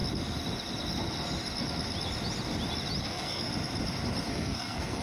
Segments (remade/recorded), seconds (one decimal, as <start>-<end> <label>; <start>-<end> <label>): 0.0-3.0 recorded; 3.0-3.5 remade; 3.5-4.3 recorded; 4.3-5.0 remade